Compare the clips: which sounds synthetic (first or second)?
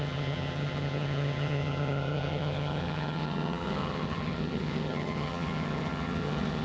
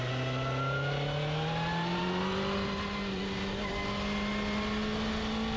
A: first